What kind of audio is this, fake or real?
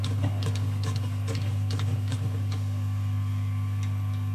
fake